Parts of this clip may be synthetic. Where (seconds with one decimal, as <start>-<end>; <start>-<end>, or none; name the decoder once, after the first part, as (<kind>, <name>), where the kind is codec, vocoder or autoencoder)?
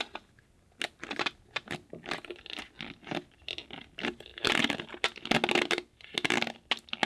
none